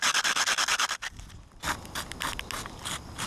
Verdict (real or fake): real